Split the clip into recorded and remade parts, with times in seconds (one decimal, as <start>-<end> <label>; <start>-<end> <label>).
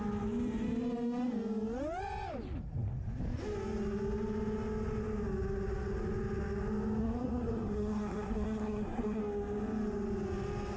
0.0-7.0 recorded; 7.0-9.2 remade; 9.2-10.8 recorded